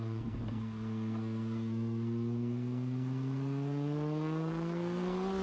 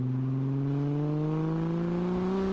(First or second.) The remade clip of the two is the first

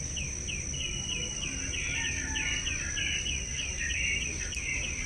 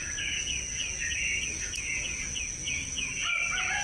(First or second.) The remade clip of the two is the second